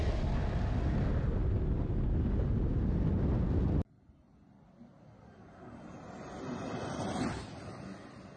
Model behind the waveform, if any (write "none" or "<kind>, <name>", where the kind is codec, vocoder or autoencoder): none